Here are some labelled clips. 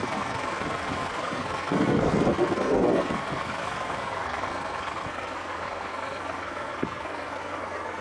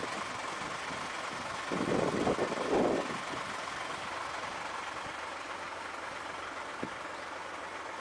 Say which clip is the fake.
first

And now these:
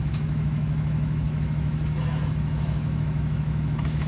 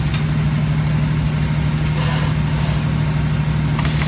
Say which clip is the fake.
first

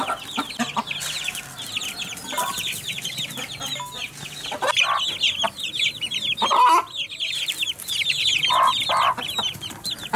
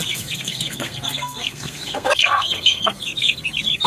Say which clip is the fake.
second